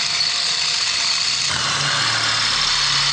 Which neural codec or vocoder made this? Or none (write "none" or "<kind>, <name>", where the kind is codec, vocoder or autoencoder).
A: none